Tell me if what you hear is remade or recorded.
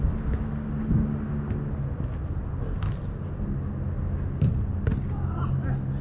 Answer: recorded